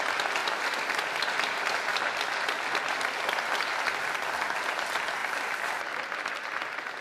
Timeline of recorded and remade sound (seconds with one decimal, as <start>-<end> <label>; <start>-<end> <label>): 0.0-7.0 recorded